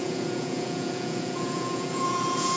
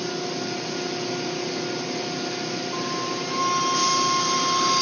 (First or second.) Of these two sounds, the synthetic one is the first